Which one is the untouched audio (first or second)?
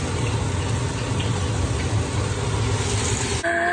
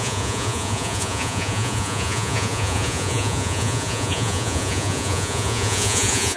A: first